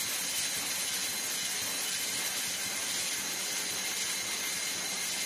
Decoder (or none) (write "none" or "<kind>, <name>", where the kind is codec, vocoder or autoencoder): none